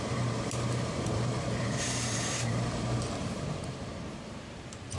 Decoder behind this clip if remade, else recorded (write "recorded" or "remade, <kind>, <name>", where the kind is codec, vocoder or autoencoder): remade, vocoder, BigVGAN v2